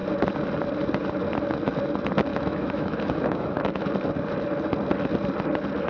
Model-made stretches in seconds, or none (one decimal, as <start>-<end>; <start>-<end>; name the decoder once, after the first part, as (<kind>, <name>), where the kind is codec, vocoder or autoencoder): 2.3-3.9 (autoencoder, DAC-VAE)